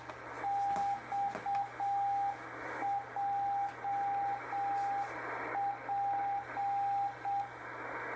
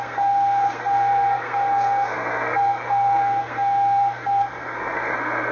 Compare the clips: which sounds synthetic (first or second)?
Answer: second